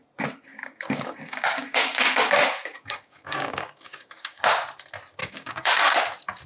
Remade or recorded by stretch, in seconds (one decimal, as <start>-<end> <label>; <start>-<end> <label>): 0.0-0.5 recorded; 0.5-4.4 remade; 4.4-5.2 recorded; 5.2-6.0 remade; 6.0-6.5 recorded